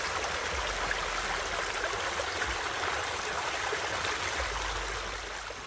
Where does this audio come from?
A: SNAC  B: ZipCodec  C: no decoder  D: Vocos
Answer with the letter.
C